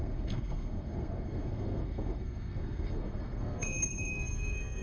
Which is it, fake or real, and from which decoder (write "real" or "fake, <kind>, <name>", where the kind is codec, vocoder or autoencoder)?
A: fake, codec, SNAC